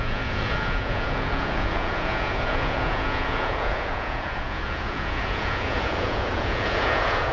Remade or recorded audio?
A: remade